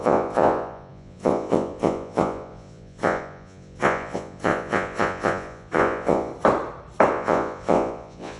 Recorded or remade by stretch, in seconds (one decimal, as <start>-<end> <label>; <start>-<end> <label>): 0.0-6.3 remade; 6.3-7.1 recorded; 7.1-8.4 remade